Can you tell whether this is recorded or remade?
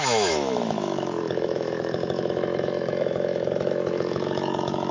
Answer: remade